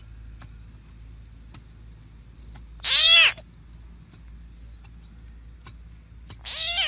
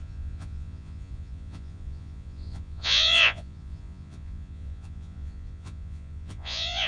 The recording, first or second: first